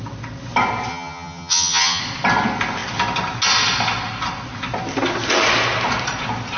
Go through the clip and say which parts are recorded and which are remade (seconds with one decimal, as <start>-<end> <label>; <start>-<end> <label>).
0.0-0.9 recorded; 0.9-2.0 remade; 2.0-6.6 recorded

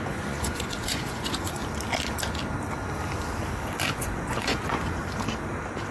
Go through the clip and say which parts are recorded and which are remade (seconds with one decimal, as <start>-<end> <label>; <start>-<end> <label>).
0.0-1.6 remade; 1.6-3.9 recorded; 3.9-5.0 remade; 5.0-5.9 recorded

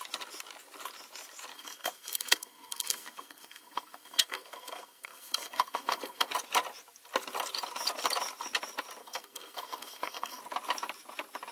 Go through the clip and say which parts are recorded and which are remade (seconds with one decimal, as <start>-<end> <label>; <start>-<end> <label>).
0.0-1.5 recorded; 1.5-6.3 remade; 6.3-9.0 recorded; 9.0-10.4 remade; 10.4-11.5 recorded

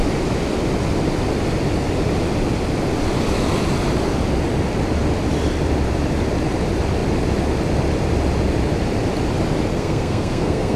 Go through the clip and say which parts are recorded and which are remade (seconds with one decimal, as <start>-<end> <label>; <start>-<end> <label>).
0.0-9.7 recorded; 9.7-10.8 remade

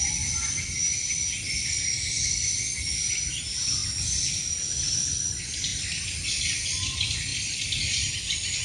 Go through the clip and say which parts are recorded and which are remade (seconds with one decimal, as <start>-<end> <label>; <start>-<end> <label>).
0.0-8.6 recorded

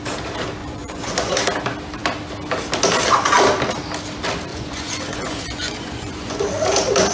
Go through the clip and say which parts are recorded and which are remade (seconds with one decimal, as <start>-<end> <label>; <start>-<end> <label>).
0.0-0.6 recorded; 0.6-1.3 remade; 1.3-4.5 recorded; 4.5-6.4 remade; 6.4-7.1 recorded

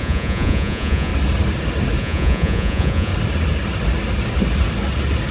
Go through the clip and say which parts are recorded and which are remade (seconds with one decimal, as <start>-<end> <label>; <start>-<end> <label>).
0.0-1.1 remade; 1.1-2.0 recorded; 2.0-3.1 remade; 3.1-5.3 recorded